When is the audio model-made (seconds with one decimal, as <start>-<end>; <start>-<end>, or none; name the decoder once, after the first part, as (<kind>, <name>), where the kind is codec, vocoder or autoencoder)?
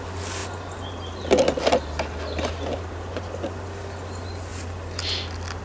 none